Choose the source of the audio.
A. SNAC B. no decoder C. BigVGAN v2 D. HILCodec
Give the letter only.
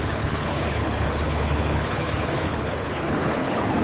D